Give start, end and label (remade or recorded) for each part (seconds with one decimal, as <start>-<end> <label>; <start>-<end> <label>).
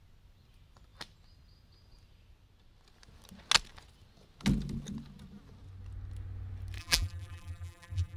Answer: 0.0-6.8 recorded; 6.8-8.2 remade